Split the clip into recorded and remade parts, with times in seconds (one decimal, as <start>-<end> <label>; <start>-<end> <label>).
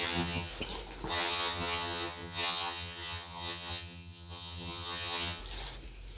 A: 0.0-0.5 remade; 0.5-1.1 recorded; 1.1-5.4 remade; 5.4-6.2 recorded